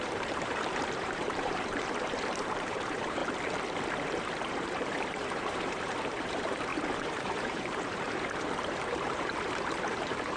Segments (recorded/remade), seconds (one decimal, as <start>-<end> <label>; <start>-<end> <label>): 0.0-3.2 remade; 3.2-4.5 recorded; 4.5-10.4 remade